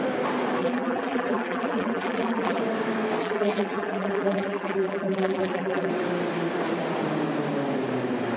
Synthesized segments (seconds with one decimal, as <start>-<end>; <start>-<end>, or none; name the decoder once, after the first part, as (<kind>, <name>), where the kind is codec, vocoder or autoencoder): 0.6-2.6 (vocoder, BigVGAN v2); 3.2-5.9